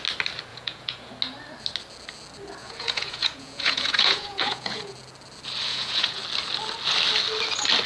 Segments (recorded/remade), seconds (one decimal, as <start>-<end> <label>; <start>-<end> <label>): 0.0-0.5 recorded; 0.5-1.1 remade; 1.1-2.6 recorded; 2.6-4.9 remade; 4.9-5.7 recorded; 5.7-6.2 remade; 6.2-7.9 recorded